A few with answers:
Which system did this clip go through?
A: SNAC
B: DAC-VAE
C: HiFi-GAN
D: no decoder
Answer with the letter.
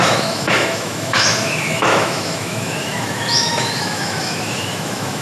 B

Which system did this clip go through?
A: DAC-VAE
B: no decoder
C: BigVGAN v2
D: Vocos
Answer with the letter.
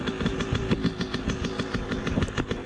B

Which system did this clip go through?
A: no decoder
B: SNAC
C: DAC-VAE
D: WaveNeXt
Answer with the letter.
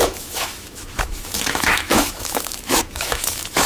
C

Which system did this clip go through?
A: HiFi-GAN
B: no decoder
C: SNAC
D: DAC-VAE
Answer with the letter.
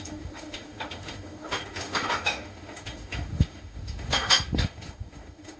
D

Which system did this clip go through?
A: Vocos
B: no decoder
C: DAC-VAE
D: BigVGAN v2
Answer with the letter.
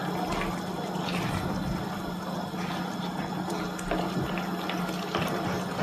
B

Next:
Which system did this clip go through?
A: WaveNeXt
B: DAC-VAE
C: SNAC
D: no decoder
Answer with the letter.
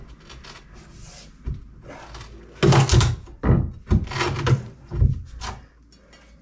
D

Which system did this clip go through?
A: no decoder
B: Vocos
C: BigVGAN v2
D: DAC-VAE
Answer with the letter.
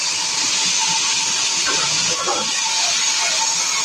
A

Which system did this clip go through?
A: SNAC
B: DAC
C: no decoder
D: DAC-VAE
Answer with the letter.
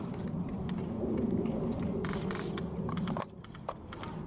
C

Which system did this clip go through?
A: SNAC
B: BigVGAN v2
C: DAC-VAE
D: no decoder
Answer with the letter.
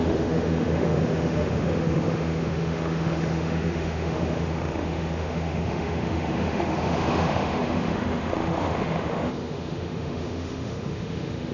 C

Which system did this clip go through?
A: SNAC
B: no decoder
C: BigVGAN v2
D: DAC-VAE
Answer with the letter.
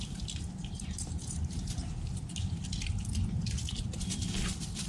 B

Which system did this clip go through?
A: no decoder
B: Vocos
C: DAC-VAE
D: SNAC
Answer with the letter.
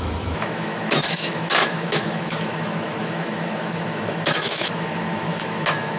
C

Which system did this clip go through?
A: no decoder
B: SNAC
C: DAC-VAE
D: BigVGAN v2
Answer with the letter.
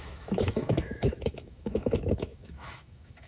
C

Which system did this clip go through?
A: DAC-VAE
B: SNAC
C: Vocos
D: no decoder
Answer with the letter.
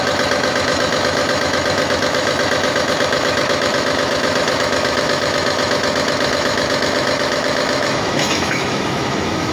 A